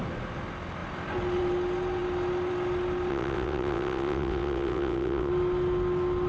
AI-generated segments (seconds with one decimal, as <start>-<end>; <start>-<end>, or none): 3.1-5.3